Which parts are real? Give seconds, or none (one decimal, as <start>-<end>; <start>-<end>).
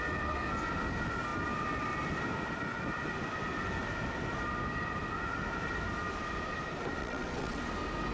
0.0-7.0; 7.6-8.1